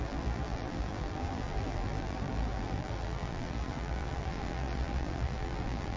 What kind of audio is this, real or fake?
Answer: fake